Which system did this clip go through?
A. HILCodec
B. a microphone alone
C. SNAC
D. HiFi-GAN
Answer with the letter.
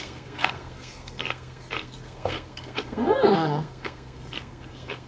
C